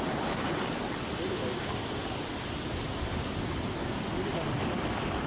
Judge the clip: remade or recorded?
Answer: recorded